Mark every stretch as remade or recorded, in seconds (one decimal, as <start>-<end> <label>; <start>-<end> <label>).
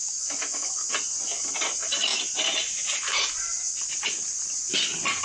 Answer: 0.0-0.9 remade; 0.9-5.2 recorded